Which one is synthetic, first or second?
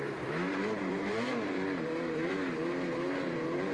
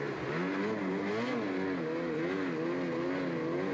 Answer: first